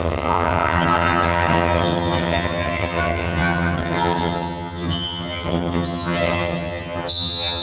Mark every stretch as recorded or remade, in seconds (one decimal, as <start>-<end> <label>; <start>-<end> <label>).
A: 0.0-7.6 remade